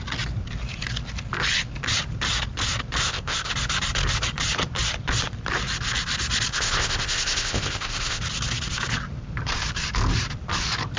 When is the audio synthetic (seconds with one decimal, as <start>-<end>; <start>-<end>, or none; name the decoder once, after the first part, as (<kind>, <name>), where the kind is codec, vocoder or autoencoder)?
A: 3.0-3.5 (codec, ZipCodec); 6.5-8.2